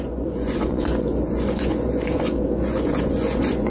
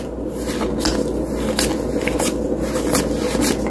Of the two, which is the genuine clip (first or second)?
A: second